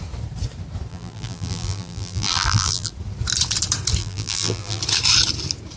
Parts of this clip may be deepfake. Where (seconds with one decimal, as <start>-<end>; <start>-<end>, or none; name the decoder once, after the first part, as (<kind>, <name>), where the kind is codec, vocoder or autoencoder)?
0.9-2.9 (vocoder, BigVGAN v2); 4.0-4.8